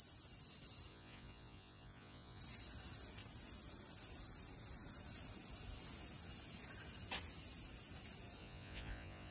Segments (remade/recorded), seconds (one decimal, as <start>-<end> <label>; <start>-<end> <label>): 0.0-0.9 recorded; 0.9-2.4 remade; 2.4-8.4 recorded; 8.4-9.3 remade